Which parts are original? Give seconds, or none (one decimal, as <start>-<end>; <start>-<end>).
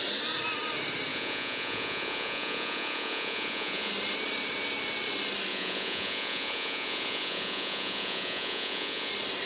0.0-1.1; 3.9-5.5; 9.1-9.5